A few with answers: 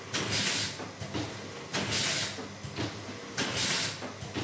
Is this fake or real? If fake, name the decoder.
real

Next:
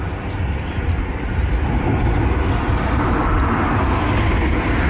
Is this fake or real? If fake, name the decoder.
real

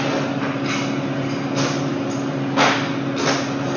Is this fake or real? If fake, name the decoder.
real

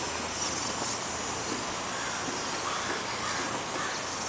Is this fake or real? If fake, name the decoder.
real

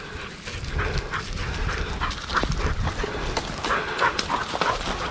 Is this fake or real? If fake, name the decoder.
real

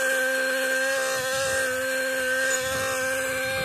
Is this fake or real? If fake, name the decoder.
real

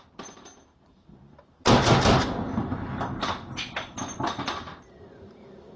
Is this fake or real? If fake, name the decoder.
real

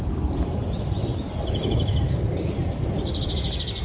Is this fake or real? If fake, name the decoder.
fake, vocoder, BigVGAN v2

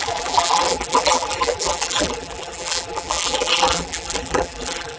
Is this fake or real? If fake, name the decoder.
fake, vocoder, BigVGAN v2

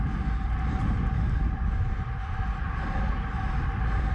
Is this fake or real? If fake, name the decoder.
real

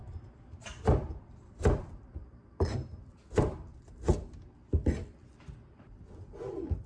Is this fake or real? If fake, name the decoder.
fake, vocoder, BigVGAN v2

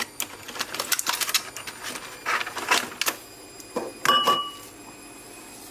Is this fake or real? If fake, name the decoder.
real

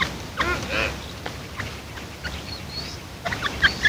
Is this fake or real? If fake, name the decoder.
real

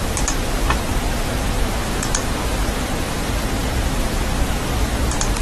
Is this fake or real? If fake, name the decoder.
fake, vocoder, BigVGAN v2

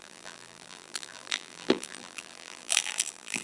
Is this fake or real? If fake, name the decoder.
fake, vocoder, BigVGAN v2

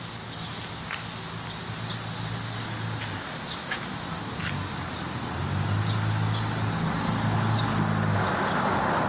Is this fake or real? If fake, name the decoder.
real